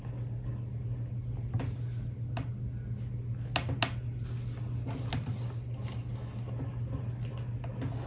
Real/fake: real